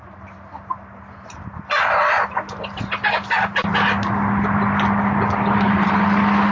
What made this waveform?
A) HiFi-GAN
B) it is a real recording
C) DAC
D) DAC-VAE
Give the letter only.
B